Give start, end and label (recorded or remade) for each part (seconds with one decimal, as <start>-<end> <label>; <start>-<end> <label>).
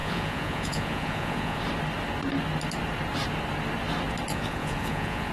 0.0-1.6 remade; 1.6-4.3 recorded; 4.3-5.3 remade